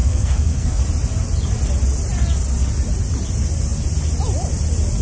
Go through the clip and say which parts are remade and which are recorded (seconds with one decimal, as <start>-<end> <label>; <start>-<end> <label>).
0.0-0.8 remade; 0.8-5.0 recorded